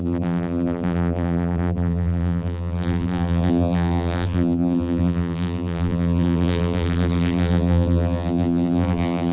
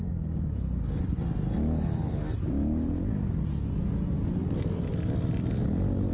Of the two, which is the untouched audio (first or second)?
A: second